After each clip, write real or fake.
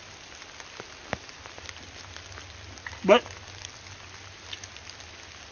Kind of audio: real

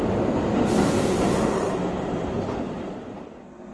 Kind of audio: fake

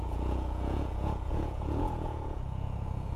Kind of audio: fake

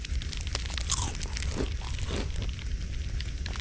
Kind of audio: real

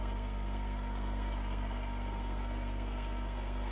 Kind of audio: fake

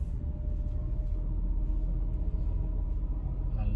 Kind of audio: real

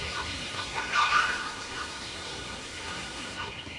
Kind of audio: fake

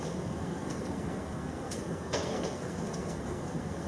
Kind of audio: fake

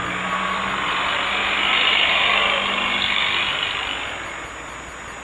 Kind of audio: real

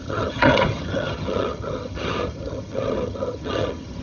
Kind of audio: fake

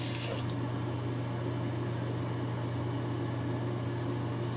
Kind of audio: real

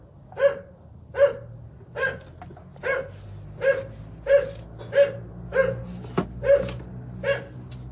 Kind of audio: real